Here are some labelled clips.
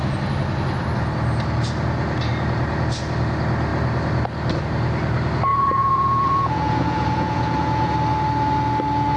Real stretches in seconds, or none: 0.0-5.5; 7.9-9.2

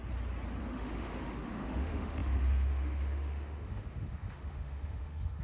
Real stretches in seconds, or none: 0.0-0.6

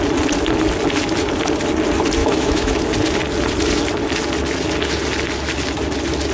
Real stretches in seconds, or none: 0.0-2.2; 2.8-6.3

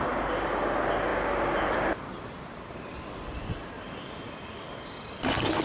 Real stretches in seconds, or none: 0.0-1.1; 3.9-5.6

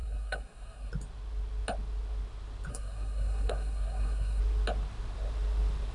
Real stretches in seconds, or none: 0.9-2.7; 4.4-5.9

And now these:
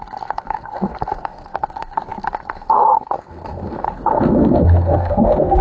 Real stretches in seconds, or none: none